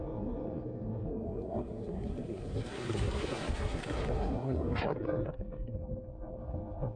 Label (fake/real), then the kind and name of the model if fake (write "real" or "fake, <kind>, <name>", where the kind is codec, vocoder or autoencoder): fake, codec, SNAC